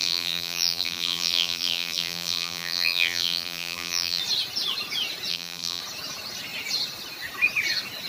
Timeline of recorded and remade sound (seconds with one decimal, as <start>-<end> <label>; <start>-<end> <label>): 0.0-4.2 remade; 4.2-5.3 recorded; 5.3-5.8 remade; 5.8-8.1 recorded